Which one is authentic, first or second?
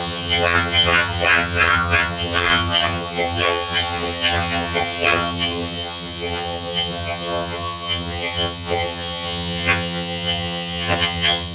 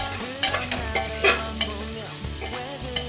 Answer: second